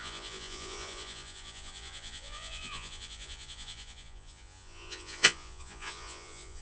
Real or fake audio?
fake